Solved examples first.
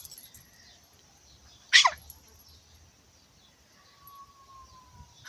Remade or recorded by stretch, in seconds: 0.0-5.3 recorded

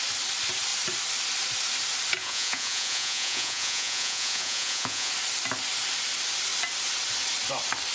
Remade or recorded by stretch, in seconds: 0.0-2.2 recorded; 2.2-5.1 remade; 5.1-7.9 recorded

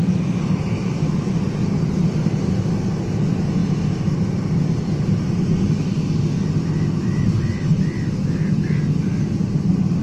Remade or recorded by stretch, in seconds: 0.0-10.0 recorded

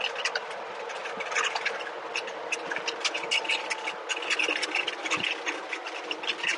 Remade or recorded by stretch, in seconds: 0.0-6.6 recorded

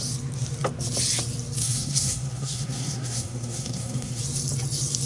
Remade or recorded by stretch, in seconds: 0.0-1.6 recorded; 1.6-4.2 remade; 4.2-5.1 recorded